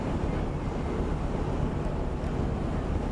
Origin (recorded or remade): recorded